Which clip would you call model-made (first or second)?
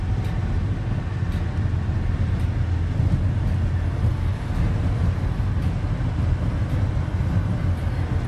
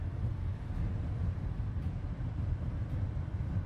second